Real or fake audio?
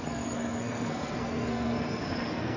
fake